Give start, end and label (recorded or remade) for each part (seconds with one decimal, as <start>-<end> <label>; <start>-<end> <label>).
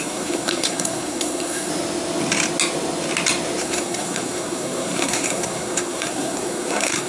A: 0.0-1.7 remade; 1.7-3.6 recorded; 3.6-7.1 remade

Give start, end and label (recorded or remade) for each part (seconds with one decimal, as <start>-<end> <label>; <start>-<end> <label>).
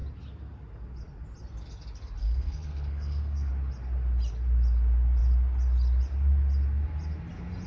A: 0.0-2.2 recorded; 2.2-3.5 remade; 3.5-7.7 recorded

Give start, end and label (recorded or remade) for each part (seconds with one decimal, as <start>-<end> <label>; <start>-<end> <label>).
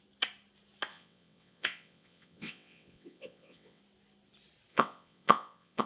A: 0.0-0.9 recorded; 0.9-3.8 remade; 3.8-4.7 recorded; 4.7-5.9 remade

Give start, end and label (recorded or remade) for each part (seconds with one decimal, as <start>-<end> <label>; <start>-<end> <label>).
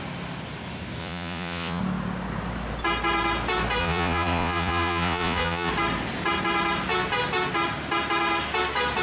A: 0.0-1.0 recorded; 1.0-1.8 remade; 1.8-3.8 recorded; 3.8-5.7 remade; 5.7-9.0 recorded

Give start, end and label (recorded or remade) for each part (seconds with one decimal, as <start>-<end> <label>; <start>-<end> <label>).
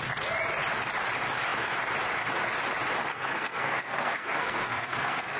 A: 0.0-3.1 recorded; 3.1-5.4 remade